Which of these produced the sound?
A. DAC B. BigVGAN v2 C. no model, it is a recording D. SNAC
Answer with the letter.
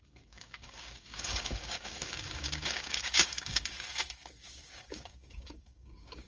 A